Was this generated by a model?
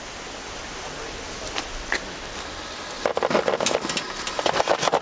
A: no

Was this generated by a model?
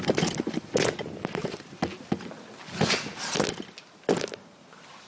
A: no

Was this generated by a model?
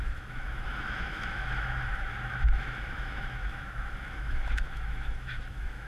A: yes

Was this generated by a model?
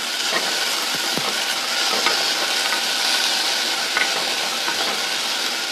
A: no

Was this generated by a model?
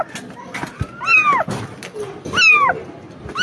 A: no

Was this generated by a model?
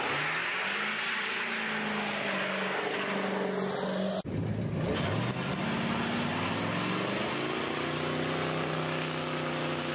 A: no